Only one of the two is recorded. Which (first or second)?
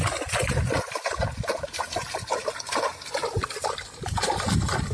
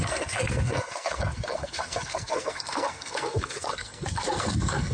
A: first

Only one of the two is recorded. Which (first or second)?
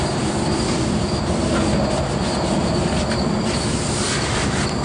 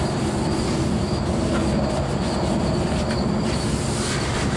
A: second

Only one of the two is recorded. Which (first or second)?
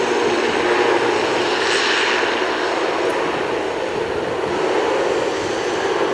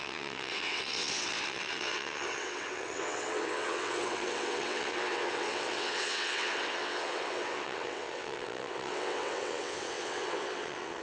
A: first